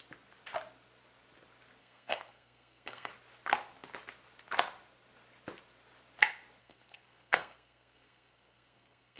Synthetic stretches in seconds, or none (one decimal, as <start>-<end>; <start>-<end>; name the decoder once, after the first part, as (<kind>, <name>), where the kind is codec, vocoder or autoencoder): 1.8-3.1 (codec, SNAC); 6.6-9.2